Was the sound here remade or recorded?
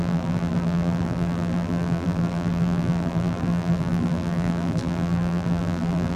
remade